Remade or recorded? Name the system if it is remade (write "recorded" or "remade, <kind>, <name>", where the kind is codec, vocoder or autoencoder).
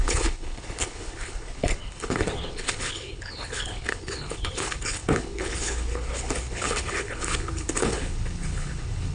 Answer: remade, codec, HILCodec